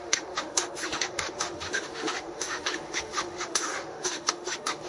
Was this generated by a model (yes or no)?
yes